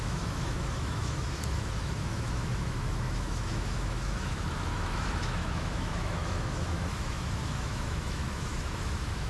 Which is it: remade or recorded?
remade